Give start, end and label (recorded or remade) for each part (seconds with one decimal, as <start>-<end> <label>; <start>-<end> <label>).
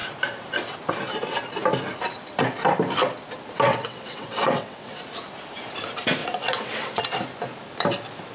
0.0-3.7 recorded; 3.7-5.0 remade; 5.0-6.2 recorded; 6.2-7.0 remade; 7.0-8.3 recorded